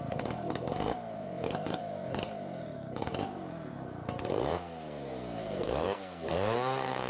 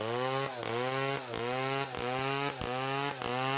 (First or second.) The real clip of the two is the second